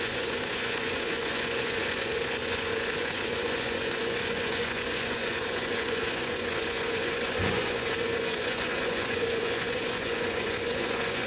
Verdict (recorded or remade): remade